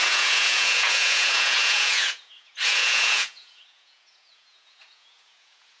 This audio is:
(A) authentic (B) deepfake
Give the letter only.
B